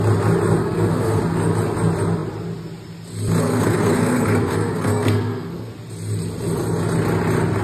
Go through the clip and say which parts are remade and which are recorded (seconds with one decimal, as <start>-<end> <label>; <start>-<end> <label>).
0.0-0.6 recorded; 0.6-1.2 remade; 1.2-3.4 recorded; 3.4-5.7 remade; 5.7-7.6 recorded